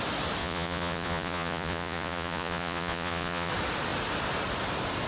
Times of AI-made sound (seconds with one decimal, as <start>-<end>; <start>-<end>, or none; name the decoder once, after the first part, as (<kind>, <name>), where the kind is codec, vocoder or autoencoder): 0.4-3.5 (vocoder, Vocos)